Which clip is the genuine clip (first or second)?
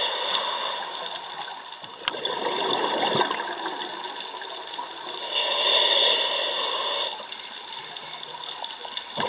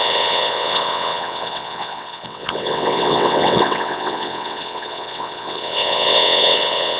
first